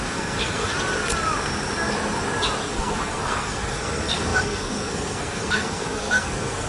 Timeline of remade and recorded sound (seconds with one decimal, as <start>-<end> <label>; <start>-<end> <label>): 0.0-0.7 remade; 0.7-2.7 recorded; 2.7-6.7 remade